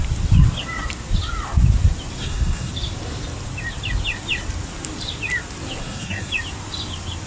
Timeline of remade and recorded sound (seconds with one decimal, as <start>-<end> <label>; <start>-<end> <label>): 0.0-2.2 recorded; 2.2-2.7 remade; 2.7-5.8 recorded; 5.8-6.3 remade; 6.3-7.3 recorded